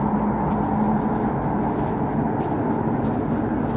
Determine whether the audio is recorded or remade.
recorded